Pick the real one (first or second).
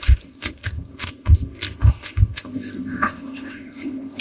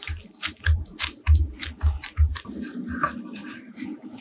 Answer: second